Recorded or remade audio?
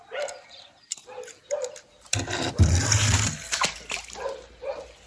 remade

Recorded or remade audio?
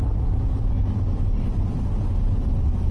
recorded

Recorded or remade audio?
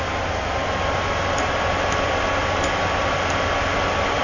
recorded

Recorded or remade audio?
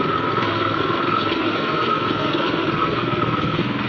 remade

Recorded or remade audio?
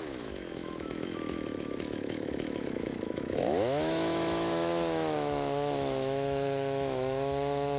remade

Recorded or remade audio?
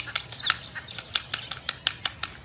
recorded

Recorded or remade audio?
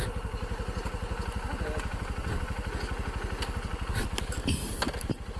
recorded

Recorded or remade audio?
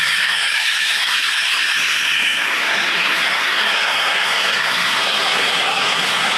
remade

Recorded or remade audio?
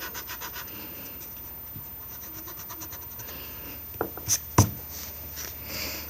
recorded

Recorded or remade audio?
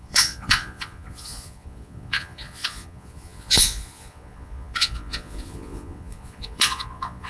remade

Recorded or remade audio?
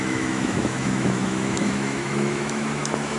remade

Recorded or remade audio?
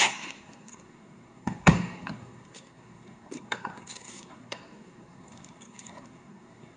remade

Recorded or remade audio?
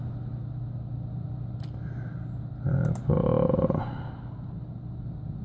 recorded